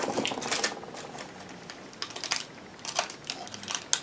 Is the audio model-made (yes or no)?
no